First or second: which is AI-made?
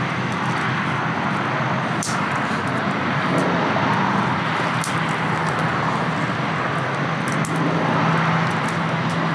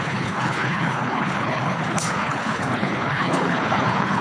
second